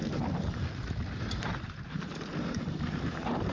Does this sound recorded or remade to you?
remade